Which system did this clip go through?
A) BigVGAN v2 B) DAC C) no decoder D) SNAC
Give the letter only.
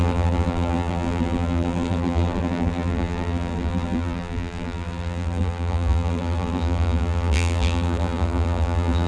A